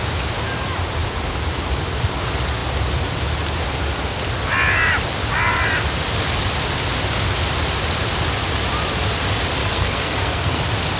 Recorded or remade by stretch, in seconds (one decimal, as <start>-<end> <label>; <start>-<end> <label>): 0.0-9.6 recorded; 9.6-10.6 remade; 10.6-11.0 recorded